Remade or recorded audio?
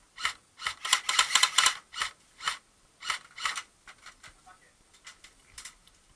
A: recorded